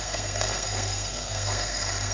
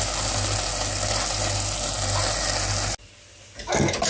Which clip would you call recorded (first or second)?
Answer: second